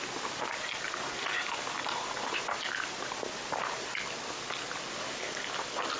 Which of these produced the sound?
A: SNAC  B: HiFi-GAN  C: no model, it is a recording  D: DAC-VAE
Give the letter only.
C